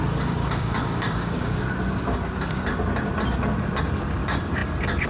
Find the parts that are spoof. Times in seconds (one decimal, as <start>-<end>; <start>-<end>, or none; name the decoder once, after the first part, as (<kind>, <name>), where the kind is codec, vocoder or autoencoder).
0.4-1.6 (codec, DAC)